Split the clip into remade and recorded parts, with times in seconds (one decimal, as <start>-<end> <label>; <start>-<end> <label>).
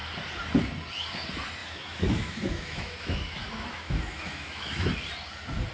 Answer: 0.0-1.6 recorded; 1.6-4.9 remade; 4.9-5.7 recorded